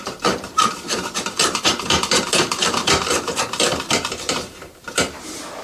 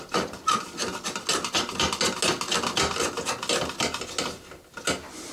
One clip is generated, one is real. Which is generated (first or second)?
first